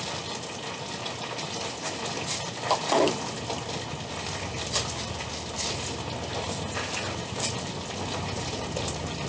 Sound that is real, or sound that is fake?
real